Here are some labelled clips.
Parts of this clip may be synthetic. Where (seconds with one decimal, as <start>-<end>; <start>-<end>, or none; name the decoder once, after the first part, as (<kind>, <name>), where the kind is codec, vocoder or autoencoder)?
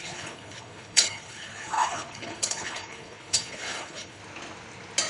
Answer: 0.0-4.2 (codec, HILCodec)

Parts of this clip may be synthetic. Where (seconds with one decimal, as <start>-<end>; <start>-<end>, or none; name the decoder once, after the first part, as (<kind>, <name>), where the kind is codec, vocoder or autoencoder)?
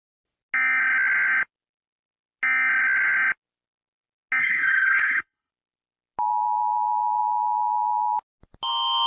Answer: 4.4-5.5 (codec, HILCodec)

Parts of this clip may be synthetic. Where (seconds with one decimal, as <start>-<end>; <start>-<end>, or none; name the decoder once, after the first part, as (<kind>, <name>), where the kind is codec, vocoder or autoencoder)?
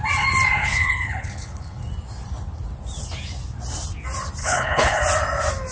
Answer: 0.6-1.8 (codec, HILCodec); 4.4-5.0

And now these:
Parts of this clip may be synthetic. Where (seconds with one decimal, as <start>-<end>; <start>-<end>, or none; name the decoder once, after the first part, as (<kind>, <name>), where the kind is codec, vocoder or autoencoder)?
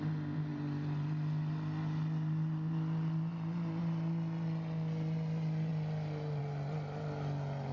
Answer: none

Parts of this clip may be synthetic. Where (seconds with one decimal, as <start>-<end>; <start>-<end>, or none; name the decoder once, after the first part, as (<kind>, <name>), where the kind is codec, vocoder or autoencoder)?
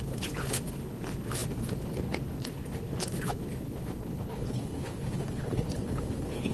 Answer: 0.0-6.5 (codec, HILCodec)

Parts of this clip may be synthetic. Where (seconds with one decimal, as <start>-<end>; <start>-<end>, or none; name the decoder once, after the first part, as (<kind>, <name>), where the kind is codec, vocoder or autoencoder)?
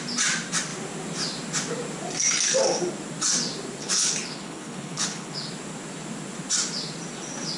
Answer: 3.8-5.5 (codec, HILCodec)